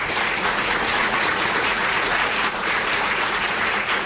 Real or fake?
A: fake